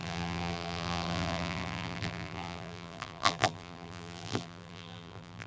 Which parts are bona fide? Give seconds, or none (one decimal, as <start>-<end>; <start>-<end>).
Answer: none